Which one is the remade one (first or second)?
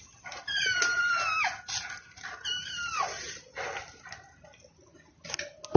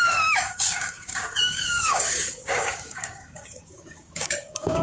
second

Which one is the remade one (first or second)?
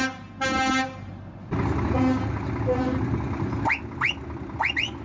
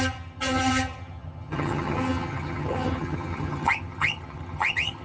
second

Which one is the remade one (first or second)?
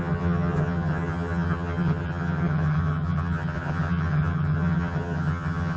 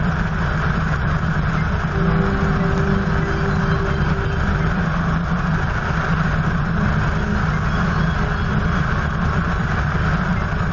first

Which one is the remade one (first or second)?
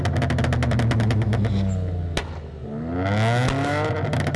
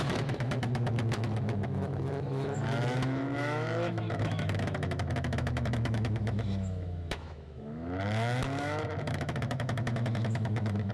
second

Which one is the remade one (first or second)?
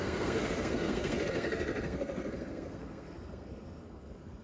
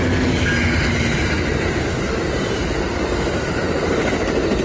first